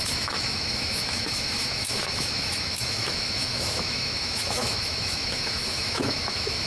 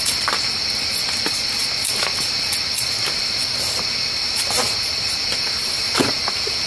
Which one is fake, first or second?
first